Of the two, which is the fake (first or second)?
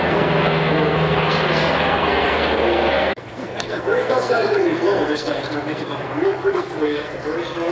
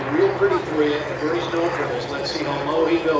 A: first